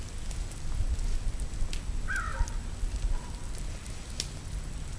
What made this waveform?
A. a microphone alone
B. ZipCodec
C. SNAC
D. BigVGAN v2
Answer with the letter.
A